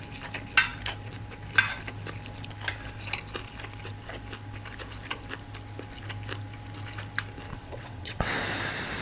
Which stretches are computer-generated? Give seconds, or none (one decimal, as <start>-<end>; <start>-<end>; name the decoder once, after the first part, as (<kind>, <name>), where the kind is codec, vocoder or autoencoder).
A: 7.5-8.4 (vocoder, WaveNeXt)